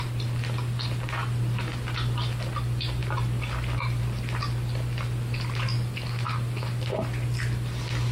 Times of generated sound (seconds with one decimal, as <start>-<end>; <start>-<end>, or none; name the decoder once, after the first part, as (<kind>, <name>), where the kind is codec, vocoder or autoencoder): none